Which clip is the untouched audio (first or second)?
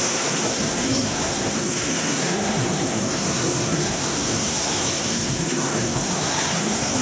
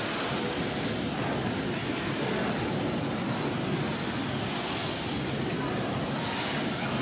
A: second